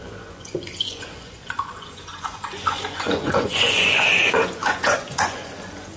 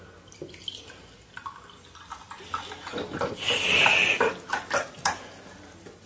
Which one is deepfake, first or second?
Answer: first